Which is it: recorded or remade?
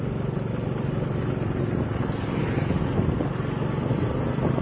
recorded